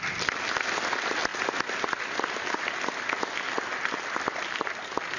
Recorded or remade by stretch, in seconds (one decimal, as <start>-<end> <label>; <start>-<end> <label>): 0.0-5.2 recorded